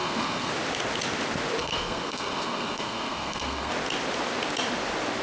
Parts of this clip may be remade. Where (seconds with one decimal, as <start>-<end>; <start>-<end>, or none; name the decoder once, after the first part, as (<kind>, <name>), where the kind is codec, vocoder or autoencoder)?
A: 0.0-0.5 (codec, SNAC); 1.6-3.7